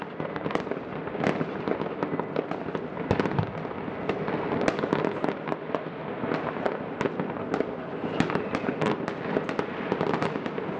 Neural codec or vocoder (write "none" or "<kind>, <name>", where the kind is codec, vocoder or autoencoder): none